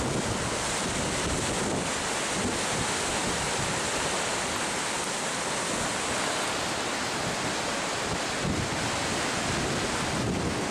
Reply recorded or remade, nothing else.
recorded